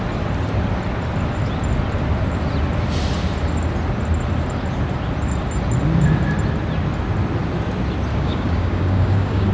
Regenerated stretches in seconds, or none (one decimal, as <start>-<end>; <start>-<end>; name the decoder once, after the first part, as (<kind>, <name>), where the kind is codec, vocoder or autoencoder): 8.1-9.5 (codec, DAC)